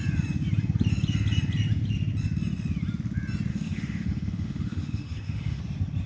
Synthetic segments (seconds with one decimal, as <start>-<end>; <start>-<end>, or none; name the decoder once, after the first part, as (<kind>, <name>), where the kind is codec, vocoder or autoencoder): 3.5-5.6 (autoencoder, DAC-VAE)